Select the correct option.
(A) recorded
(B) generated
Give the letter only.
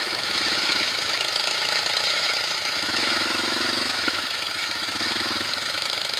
B